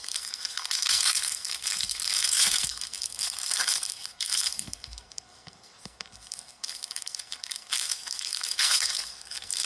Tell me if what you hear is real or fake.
fake